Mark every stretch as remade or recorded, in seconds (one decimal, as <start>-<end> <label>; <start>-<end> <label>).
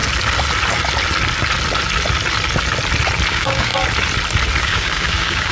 0.0-3.3 recorded; 3.3-3.7 remade; 3.7-4.6 recorded; 4.6-5.5 remade